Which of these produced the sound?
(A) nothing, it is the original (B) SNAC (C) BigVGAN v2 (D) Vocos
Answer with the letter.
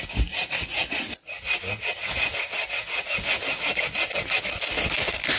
A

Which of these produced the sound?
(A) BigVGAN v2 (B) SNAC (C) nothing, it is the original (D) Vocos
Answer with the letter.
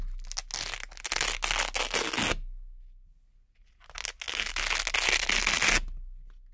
C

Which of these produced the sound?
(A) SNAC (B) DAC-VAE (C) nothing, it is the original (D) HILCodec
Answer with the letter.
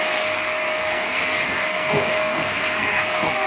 A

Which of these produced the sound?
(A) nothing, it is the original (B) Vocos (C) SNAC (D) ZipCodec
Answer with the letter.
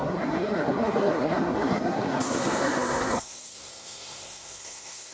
C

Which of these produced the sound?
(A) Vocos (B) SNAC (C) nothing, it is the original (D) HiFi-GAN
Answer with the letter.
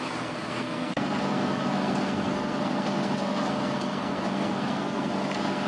B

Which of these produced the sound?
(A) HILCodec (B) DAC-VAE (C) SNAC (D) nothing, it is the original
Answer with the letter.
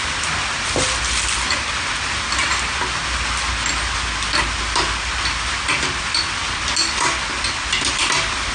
D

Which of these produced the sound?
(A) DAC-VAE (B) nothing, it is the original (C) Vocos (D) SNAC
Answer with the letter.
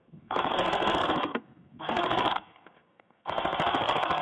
D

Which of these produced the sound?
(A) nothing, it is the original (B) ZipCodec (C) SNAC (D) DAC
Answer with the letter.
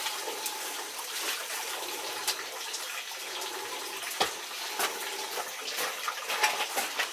A